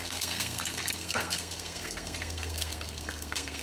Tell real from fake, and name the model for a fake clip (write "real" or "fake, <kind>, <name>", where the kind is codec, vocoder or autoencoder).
fake, codec, SNAC